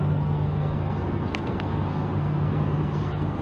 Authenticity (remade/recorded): remade